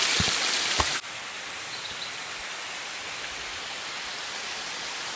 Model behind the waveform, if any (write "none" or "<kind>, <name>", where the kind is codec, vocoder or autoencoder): none